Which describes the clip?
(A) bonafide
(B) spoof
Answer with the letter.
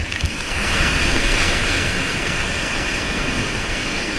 B